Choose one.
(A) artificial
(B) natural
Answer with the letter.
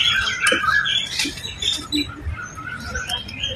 B